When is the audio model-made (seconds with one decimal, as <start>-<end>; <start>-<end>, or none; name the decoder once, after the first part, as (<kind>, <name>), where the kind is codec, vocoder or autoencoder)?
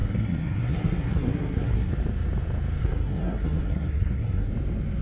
0.0-1.9 (codec, SNAC); 2.8-4.5